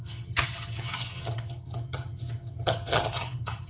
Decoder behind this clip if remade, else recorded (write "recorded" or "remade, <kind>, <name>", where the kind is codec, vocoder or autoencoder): remade, vocoder, HiFi-GAN